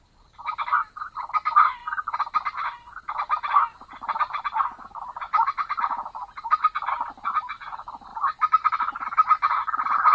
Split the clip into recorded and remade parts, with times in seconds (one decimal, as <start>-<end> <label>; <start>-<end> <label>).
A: 0.0-10.1 recorded